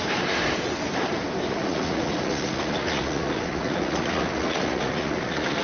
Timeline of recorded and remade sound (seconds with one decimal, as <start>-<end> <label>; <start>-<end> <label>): 0.0-1.5 recorded; 1.5-5.6 remade